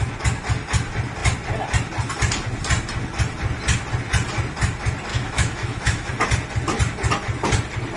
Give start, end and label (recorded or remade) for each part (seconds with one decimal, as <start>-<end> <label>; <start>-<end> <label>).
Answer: 0.0-5.1 recorded; 5.1-6.1 remade; 6.1-8.0 recorded